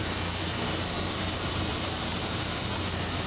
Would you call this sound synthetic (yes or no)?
yes